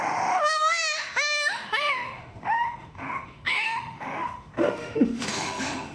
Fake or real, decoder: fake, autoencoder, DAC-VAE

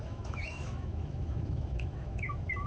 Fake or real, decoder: fake, autoencoder, DAC-VAE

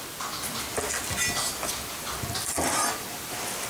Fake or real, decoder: real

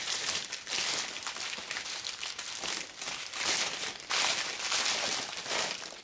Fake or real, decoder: real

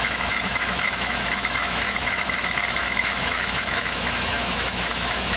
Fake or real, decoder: fake, autoencoder, DAC-VAE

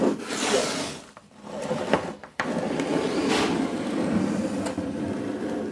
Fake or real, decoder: real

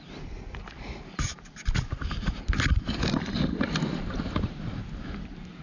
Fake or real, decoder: real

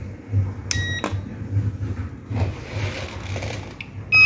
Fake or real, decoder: real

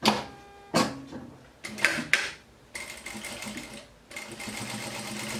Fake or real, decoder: real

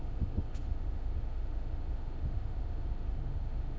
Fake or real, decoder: fake, autoencoder, DAC-VAE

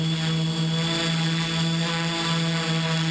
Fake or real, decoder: real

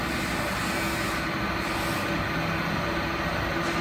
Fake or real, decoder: real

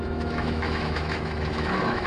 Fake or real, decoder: fake, autoencoder, DAC-VAE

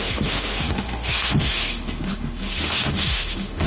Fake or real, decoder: fake, autoencoder, DAC-VAE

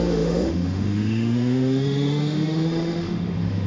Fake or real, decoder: fake, autoencoder, DAC-VAE